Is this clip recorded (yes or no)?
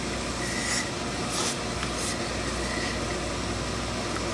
yes